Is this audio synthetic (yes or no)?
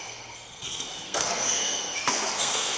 yes